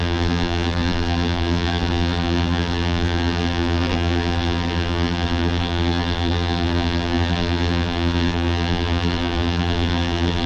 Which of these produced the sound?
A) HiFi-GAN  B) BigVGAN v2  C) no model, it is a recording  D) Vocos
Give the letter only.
B